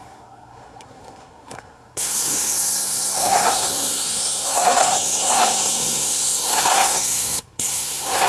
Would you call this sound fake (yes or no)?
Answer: yes